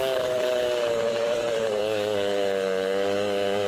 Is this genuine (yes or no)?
no